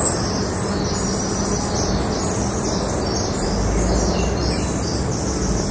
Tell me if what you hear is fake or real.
real